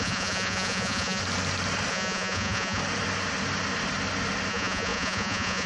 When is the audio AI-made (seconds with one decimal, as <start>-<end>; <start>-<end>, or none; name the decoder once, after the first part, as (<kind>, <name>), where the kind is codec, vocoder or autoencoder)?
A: 0.0-1.2 (vocoder, Vocos); 1.9-2.8; 4.5-5.7